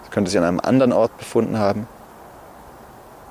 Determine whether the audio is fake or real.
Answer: real